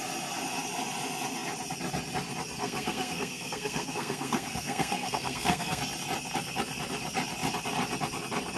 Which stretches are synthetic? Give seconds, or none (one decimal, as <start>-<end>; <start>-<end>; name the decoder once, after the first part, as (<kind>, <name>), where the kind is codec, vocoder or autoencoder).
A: 2.6-5.8 (codec, SNAC)